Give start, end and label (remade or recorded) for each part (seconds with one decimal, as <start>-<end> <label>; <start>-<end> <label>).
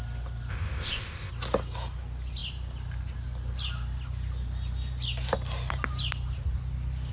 0.0-0.5 recorded; 0.5-1.3 remade; 1.3-7.1 recorded